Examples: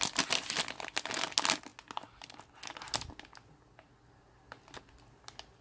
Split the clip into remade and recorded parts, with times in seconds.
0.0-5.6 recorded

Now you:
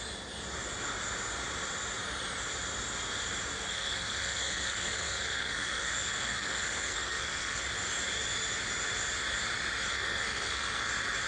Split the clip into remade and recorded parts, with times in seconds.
0.0-3.7 recorded; 3.7-7.6 remade; 7.6-9.9 recorded; 9.9-10.9 remade; 10.9-11.3 recorded

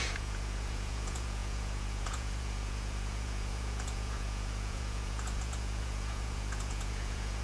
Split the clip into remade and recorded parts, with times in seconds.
0.0-7.4 remade

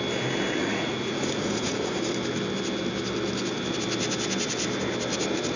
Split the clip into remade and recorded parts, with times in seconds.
0.0-0.6 recorded; 0.6-2.0 remade; 2.0-5.6 recorded

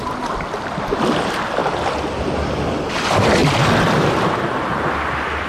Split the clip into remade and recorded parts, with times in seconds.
0.0-5.5 recorded

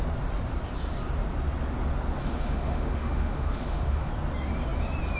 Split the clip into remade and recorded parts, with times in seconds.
0.0-2.2 recorded; 2.2-4.1 remade; 4.1-5.2 recorded